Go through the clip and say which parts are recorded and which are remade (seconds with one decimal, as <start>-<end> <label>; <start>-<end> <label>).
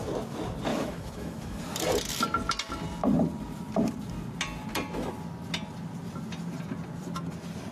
0.0-0.7 recorded; 0.7-1.6 remade; 1.6-7.7 recorded